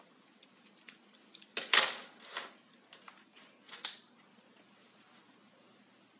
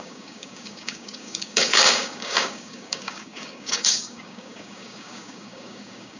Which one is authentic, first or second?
first